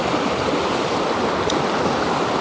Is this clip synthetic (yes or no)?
no